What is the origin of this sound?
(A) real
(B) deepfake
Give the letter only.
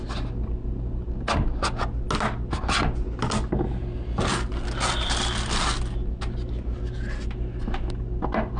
A